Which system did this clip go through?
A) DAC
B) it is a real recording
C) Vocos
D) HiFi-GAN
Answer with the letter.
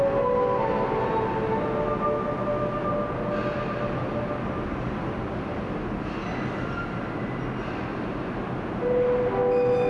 B